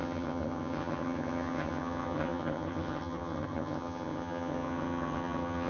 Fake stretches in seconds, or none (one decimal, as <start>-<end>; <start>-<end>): 0.0-5.7